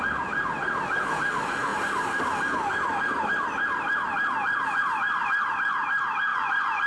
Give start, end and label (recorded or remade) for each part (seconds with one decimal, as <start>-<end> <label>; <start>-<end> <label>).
0.0-6.3 recorded; 6.3-6.9 remade